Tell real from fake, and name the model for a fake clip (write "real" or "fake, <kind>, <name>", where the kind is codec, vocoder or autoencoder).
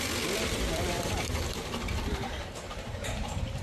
fake, vocoder, BigVGAN v2